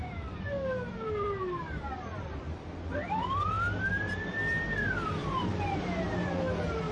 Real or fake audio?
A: real